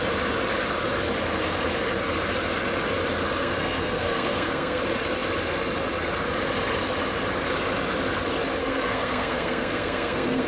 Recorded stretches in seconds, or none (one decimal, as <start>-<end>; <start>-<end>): 0.0-3.4; 4.8-8.6